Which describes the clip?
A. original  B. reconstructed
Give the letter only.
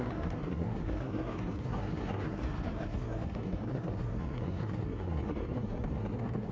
B